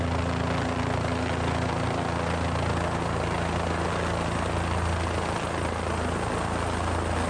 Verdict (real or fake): real